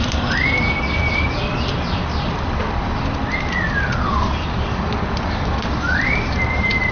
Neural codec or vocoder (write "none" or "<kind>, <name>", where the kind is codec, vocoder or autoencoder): vocoder, BigVGAN v2